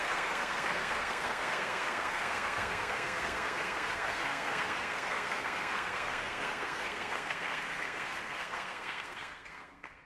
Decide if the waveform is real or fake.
fake